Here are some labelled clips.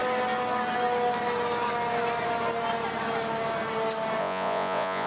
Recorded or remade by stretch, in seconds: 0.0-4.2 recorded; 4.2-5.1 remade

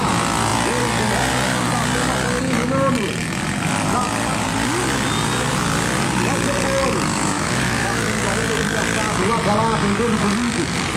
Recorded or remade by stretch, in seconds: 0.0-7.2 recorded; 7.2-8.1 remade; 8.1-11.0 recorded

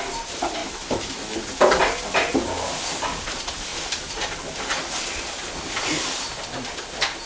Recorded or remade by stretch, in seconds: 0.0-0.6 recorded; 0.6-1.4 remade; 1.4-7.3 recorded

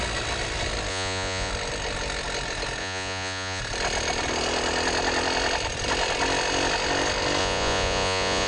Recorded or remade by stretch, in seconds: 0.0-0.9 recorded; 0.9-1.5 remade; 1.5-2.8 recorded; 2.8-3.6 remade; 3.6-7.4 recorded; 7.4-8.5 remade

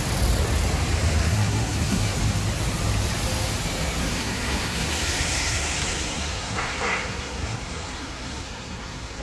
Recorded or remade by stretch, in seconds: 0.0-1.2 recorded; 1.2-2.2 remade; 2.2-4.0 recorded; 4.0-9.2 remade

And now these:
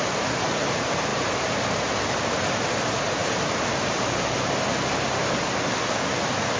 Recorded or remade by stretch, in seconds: 0.0-1.1 recorded; 1.1-1.9 remade; 1.9-3.2 recorded; 3.2-4.5 remade; 4.5-6.6 recorded

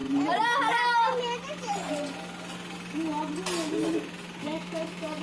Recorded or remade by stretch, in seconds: 0.0-4.4 recorded; 4.4-5.2 remade

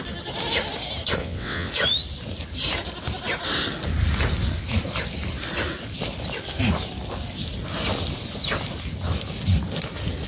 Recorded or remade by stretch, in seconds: 0.0-1.2 recorded; 1.2-1.7 remade; 1.7-10.3 recorded